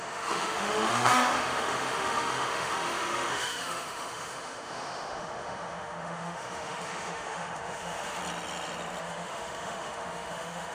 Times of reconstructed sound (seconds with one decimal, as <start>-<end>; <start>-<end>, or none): 0.0-8.2; 9.0-10.7